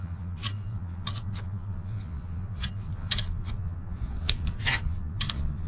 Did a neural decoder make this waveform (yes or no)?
yes